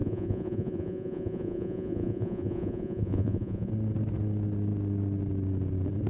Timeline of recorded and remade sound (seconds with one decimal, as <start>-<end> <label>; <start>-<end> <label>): 0.0-3.7 remade; 3.7-6.1 recorded